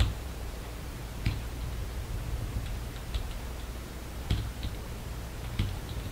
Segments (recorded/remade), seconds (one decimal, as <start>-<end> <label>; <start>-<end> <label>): 0.0-6.1 remade